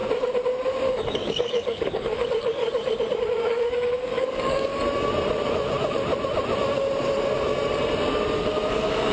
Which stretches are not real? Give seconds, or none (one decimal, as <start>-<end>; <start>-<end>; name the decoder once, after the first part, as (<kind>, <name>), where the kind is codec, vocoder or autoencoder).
0.9-2.6 (codec, DAC); 3.4-4.7; 8.7-9.1